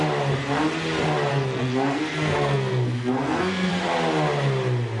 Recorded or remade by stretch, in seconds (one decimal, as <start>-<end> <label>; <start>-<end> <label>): 0.0-1.3 recorded; 1.3-3.7 remade; 3.7-5.0 recorded